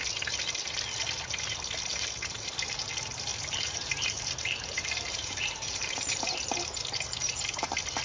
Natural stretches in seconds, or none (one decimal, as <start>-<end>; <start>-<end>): 0.0-1.9; 2.9-3.3; 7.6-8.0